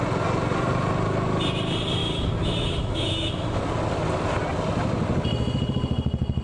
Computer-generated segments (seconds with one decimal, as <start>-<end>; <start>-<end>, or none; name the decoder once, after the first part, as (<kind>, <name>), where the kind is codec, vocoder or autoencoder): 2.0-3.6 (autoencoder, DAC-VAE)